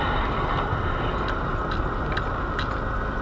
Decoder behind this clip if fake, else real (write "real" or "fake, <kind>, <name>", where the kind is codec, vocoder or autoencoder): real